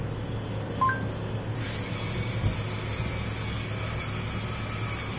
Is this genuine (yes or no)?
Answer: yes